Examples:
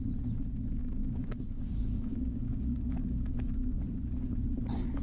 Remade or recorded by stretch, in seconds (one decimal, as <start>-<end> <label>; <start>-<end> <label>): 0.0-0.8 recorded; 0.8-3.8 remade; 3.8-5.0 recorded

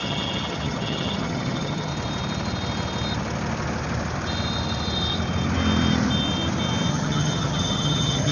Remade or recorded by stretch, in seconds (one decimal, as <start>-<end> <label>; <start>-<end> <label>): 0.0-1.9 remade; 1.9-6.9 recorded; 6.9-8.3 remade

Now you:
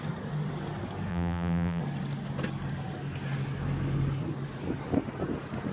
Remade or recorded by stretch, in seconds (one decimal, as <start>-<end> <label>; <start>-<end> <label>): 0.0-1.1 recorded; 1.1-1.8 remade; 1.8-5.7 recorded